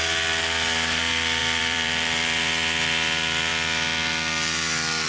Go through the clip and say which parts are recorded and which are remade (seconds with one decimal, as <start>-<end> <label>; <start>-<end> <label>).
0.0-1.4 recorded; 1.4-2.4 remade; 2.4-5.1 recorded